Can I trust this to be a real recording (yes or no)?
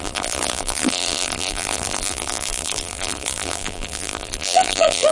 no